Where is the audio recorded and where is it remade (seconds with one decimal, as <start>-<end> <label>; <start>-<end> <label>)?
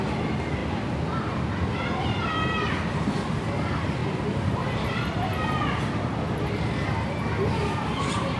0.0-0.6 remade; 0.6-1.8 recorded; 1.8-5.3 remade; 5.3-8.0 recorded; 8.0-8.4 remade